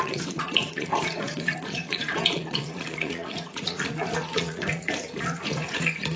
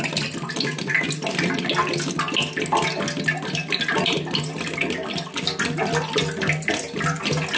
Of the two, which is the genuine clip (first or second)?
second